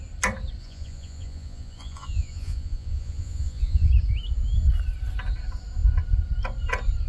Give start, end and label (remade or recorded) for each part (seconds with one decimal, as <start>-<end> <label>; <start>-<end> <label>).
0.0-0.6 recorded; 0.6-3.9 remade; 3.9-7.1 recorded